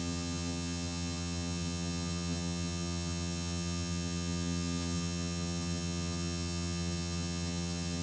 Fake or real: fake